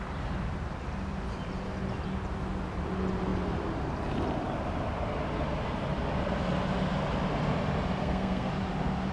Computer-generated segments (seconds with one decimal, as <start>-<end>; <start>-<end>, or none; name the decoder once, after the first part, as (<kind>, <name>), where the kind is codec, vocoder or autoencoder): 8.0-8.5 (codec, SNAC)